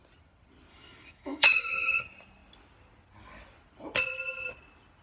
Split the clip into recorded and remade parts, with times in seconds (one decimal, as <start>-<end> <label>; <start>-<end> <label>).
0.0-0.7 recorded; 0.7-2.0 remade; 2.0-5.0 recorded